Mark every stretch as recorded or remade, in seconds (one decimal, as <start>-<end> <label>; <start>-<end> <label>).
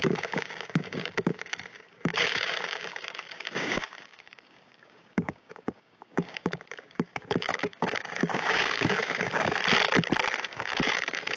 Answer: 0.0-9.6 remade; 9.6-10.4 recorded; 10.4-11.4 remade